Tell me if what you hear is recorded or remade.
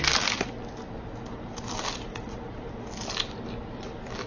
recorded